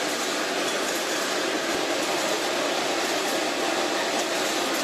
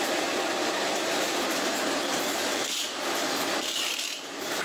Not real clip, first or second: second